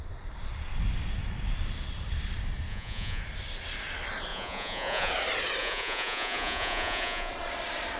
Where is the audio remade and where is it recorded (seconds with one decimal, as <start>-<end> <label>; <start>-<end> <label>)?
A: 0.0-2.7 recorded; 2.7-3.2 remade; 3.2-4.3 recorded; 4.3-5.1 remade; 5.1-5.6 recorded; 5.6-7.3 remade; 7.3-8.0 recorded